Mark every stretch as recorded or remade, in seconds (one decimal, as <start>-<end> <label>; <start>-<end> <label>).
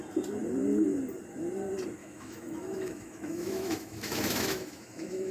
0.0-2.0 recorded; 2.0-5.3 remade